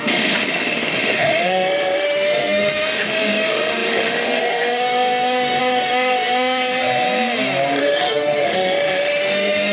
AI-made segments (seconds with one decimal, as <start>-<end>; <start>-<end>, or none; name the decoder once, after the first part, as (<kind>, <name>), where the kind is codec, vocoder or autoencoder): 0.0-6.8 (autoencoder, DAC-VAE); 7.8-9.7